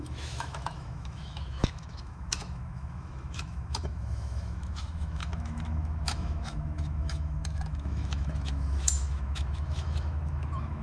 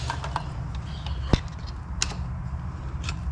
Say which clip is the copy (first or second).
first